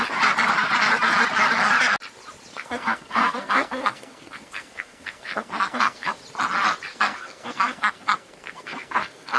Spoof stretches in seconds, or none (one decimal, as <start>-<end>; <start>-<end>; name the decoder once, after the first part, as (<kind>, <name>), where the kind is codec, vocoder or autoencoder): 2.5-6.2 (codec, SNAC); 6.9-9.4